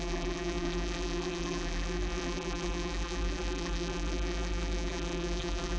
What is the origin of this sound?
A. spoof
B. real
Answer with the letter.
A